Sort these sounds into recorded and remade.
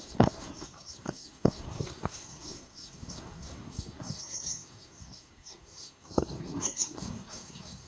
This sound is remade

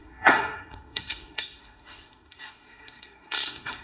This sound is remade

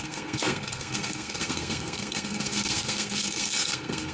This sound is remade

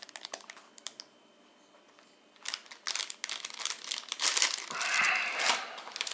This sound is recorded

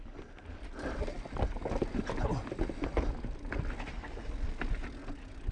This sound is recorded